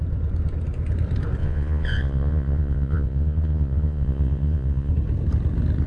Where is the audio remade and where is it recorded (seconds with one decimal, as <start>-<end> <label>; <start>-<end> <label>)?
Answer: 0.0-1.4 recorded; 1.4-4.9 remade; 4.9-5.9 recorded